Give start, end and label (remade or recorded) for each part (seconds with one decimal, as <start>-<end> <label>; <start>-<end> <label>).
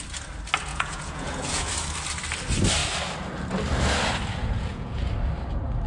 0.0-0.7 recorded; 0.7-1.7 remade; 1.7-4.4 recorded; 4.4-5.1 remade; 5.1-5.9 recorded